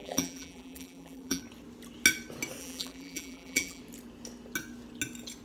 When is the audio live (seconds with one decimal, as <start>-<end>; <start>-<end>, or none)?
1.4-2.6; 3.8-5.4